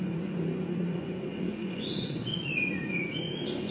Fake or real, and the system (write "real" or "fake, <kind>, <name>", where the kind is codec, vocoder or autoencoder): fake, vocoder, Vocos